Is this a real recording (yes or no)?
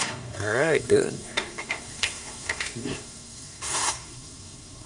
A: no